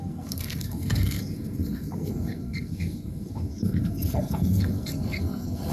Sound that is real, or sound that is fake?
fake